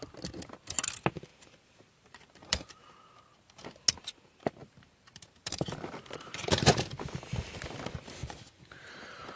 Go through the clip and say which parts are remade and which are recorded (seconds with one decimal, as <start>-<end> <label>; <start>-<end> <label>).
0.0-1.3 recorded; 1.3-3.2 remade; 3.2-4.6 recorded; 4.6-7.2 remade; 7.2-9.4 recorded